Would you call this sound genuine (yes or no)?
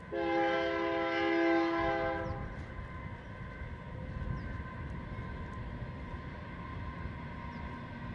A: yes